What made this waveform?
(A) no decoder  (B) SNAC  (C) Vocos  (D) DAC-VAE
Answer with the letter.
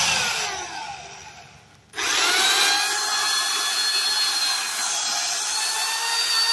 A